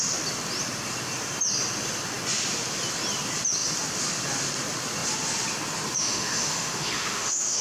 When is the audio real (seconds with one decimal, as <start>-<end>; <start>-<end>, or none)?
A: 0.0-6.0